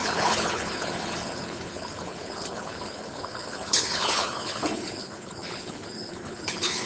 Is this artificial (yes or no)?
yes